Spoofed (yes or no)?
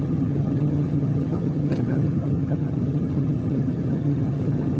yes